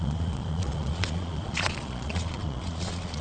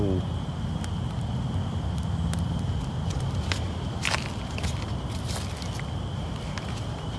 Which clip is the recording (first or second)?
second